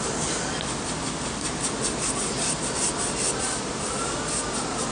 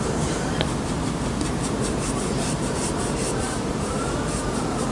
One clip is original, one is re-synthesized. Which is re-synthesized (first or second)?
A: second